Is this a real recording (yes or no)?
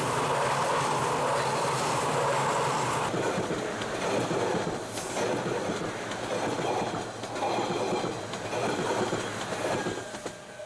yes